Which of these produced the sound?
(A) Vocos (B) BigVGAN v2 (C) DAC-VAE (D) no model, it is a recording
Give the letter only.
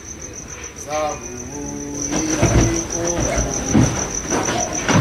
D